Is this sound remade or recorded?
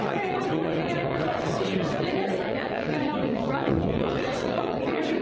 remade